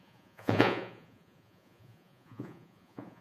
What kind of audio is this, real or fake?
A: fake